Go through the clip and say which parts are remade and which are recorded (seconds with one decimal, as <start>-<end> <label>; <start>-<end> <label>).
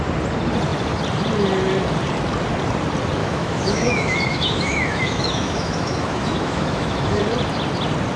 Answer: 0.0-3.2 recorded; 3.2-7.2 remade; 7.2-8.2 recorded